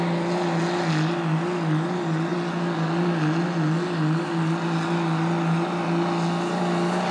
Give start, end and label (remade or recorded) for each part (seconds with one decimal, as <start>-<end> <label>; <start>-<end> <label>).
0.0-7.1 recorded